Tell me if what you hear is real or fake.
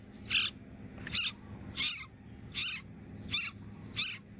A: real